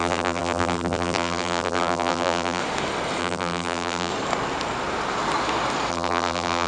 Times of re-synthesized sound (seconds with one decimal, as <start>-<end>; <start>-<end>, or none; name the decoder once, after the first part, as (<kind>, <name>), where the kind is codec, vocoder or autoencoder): 0.0-2.6 (vocoder, BigVGAN v2); 3.2-4.1; 5.9-6.7